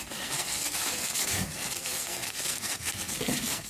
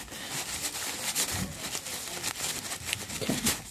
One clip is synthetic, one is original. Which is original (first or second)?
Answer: second